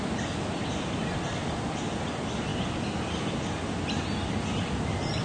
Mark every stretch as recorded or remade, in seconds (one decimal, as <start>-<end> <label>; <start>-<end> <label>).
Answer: 0.0-5.2 recorded